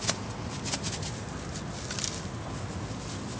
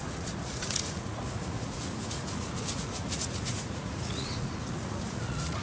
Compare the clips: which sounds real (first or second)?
first